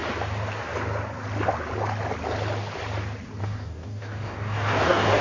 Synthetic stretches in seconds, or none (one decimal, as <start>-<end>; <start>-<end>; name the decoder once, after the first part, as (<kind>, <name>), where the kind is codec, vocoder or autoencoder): 3.4-5.2 (codec, DAC)